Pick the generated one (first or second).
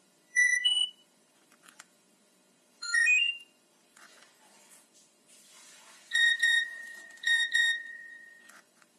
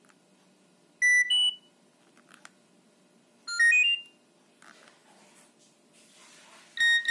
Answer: first